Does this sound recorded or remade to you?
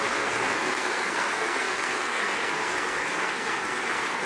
remade